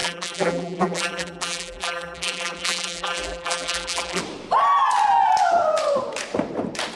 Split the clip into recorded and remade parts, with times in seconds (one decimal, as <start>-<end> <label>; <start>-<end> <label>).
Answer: 0.0-4.2 remade; 4.2-7.0 recorded